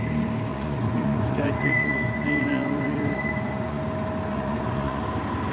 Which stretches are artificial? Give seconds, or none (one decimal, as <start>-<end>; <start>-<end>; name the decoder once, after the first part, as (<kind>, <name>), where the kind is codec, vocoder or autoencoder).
0.5-3.8 (vocoder, Vocos); 4.3-5.0